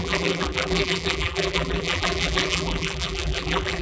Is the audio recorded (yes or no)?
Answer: no